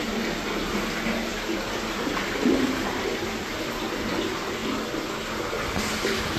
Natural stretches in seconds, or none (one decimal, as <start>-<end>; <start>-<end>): 0.0-6.4